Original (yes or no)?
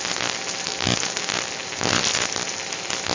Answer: yes